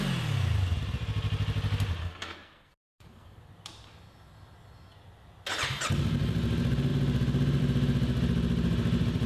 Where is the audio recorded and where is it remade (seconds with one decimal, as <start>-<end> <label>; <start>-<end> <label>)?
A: 0.0-2.0 recorded; 2.0-3.4 remade; 3.4-9.3 recorded